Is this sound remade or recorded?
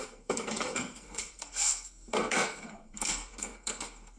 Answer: remade